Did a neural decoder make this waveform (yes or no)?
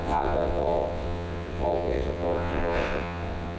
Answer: yes